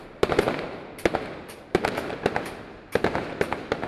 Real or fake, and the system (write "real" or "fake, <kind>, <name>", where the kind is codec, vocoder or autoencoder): real